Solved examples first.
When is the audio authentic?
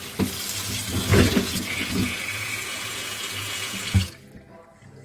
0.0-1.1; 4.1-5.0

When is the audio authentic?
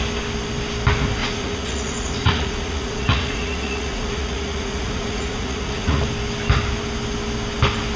0.0-1.2; 6.0-8.0